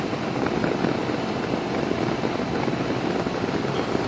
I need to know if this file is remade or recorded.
recorded